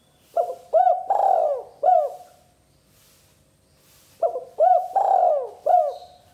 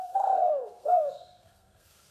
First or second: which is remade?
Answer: second